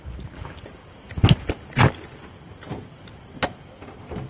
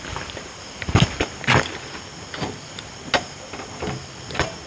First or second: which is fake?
first